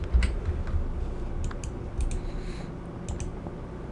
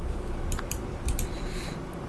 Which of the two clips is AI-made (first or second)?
second